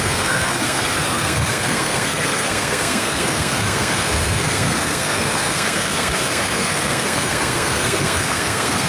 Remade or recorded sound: remade